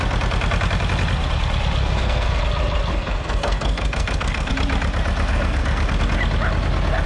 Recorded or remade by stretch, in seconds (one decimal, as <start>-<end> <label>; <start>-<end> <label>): 0.0-1.8 recorded; 1.8-2.4 remade; 2.4-2.9 recorded; 2.9-4.5 remade; 4.5-5.3 recorded; 5.3-6.0 remade; 6.0-7.1 recorded